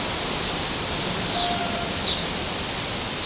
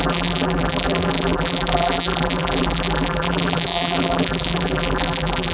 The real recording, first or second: first